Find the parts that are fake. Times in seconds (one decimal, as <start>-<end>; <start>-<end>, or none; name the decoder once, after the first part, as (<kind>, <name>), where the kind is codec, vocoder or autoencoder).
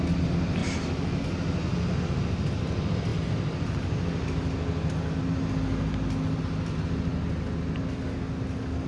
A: none